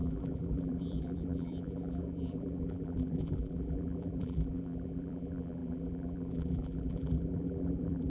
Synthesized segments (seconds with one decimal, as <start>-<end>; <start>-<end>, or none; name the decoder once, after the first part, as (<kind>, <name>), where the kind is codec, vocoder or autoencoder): 0.0-8.1 (vocoder, BigVGAN v2)